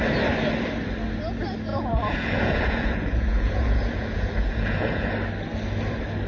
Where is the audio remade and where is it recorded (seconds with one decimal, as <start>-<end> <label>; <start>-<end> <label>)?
0.0-1.7 recorded; 1.7-5.1 remade; 5.1-6.3 recorded